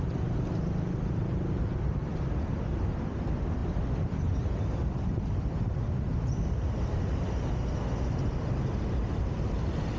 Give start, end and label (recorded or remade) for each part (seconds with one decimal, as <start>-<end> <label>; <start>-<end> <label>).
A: 0.0-10.0 recorded